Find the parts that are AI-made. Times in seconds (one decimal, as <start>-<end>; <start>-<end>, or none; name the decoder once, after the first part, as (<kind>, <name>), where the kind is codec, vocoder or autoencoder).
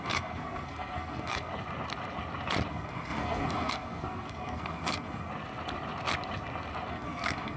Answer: 0.0-1.5 (codec, SNAC); 2.7-5.3; 6.9-7.6